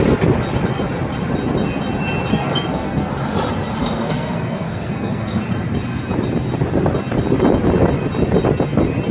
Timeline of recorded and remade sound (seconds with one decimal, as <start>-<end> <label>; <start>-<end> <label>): 0.0-2.3 recorded; 2.3-3.1 remade; 3.1-3.8 recorded; 3.8-5.4 remade; 5.4-9.1 recorded